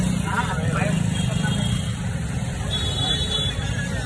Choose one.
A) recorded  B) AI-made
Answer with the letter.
A